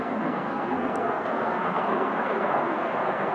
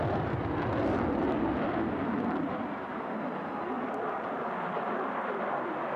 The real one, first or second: second